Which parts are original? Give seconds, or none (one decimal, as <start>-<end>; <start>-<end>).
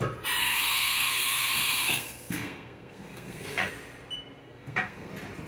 0.0-0.4; 3.7-4.4; 5.1-5.5